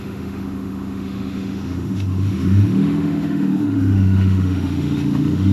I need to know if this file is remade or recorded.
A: remade